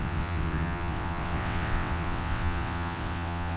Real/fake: fake